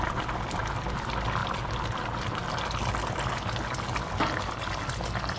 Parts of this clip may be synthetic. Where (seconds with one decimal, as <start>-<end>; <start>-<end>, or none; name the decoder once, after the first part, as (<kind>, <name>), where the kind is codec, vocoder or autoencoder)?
none